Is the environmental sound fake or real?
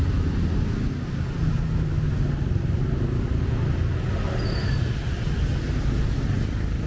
real